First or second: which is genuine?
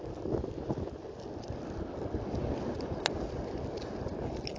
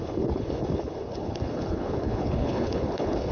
first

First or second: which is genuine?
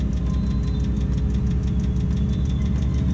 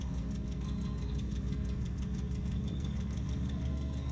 first